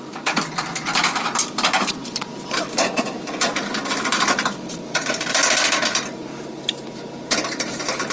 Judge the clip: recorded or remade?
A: remade